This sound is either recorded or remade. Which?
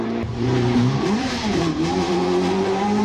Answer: remade